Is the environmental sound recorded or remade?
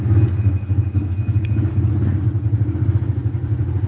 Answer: recorded